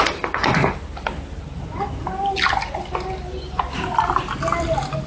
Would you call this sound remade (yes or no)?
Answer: no